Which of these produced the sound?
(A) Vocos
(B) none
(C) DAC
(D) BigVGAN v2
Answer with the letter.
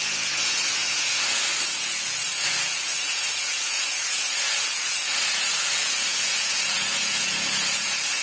A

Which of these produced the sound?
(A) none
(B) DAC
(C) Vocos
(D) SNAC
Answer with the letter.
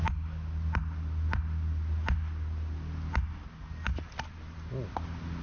A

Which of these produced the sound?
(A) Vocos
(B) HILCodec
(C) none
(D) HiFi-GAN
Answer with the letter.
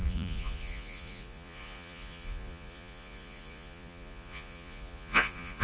A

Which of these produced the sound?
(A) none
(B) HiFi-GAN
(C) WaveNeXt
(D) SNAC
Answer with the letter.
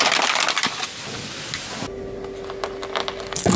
A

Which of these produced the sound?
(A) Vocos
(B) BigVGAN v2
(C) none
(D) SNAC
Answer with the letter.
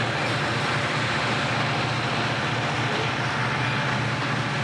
C